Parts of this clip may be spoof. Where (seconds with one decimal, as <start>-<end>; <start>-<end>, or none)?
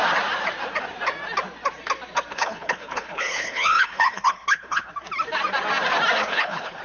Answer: 2.3-4.9; 6.2-6.8